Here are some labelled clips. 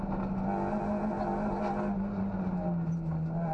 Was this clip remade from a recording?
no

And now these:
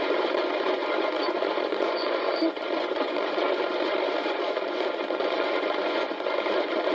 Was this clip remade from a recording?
yes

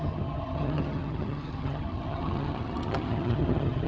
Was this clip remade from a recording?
yes